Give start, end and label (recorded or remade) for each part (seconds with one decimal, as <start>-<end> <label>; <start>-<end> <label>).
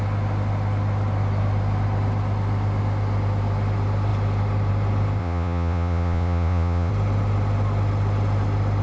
0.0-5.2 recorded; 5.2-6.9 remade; 6.9-8.8 recorded